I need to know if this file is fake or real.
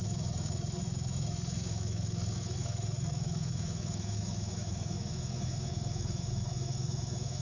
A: fake